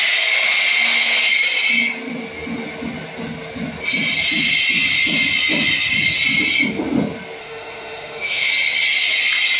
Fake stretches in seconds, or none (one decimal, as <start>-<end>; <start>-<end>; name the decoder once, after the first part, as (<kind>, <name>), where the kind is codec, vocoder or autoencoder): 7.4-8.5 (autoencoder, DAC-VAE)